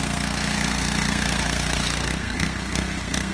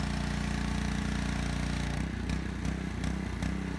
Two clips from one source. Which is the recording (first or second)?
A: second